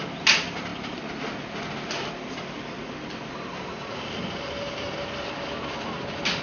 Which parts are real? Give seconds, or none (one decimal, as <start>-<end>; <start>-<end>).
0.0-6.4